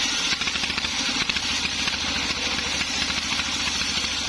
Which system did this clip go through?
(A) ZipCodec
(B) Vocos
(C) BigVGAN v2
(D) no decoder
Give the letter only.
C